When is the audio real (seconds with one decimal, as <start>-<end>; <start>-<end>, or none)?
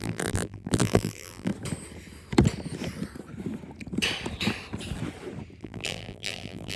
1.5-5.6